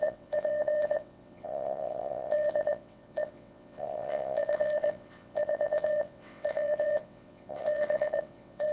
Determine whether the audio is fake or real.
fake